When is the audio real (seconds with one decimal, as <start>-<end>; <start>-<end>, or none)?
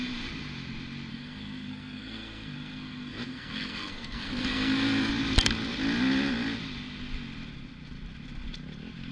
0.0-1.1; 5.1-9.1